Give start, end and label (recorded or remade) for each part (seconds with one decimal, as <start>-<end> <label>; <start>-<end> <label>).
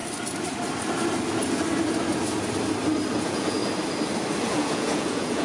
0.0-3.2 recorded; 3.2-3.6 remade; 3.6-4.4 recorded; 4.4-5.4 remade